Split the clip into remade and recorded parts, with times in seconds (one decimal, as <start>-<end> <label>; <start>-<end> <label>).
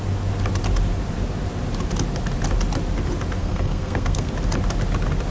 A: 0.0-3.4 recorded; 3.4-4.3 remade; 4.3-5.3 recorded